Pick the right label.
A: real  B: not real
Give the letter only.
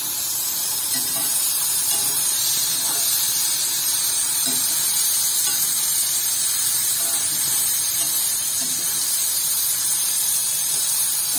B